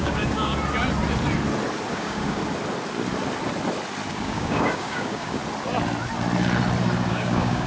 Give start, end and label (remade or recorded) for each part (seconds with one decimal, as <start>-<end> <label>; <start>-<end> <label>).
0.0-0.5 remade; 0.5-1.9 recorded; 1.9-2.4 remade; 2.4-4.1 recorded; 4.1-5.4 remade; 5.4-7.1 recorded; 7.1-7.7 remade